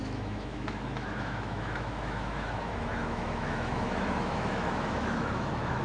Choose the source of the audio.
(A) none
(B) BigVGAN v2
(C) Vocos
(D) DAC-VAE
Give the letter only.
D